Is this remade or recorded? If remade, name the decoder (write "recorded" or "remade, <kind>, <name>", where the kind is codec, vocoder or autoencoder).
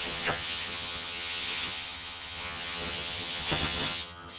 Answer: remade, vocoder, HiFi-GAN